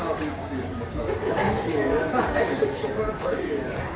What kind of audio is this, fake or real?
fake